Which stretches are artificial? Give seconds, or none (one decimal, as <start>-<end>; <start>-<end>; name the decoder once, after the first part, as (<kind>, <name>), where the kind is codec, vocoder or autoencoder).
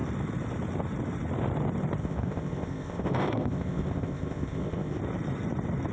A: 2.0-5.0 (codec, ZipCodec)